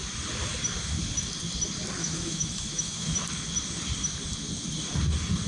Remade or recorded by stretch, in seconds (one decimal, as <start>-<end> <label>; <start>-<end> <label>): 0.0-2.0 recorded; 2.0-3.1 remade; 3.1-5.5 recorded